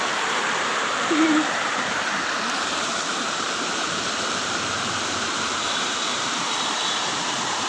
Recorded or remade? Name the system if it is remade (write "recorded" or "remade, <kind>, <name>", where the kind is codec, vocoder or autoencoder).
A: remade, vocoder, BigVGAN v2